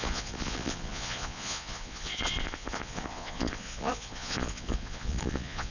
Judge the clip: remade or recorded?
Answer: remade